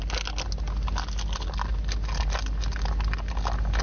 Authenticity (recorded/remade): recorded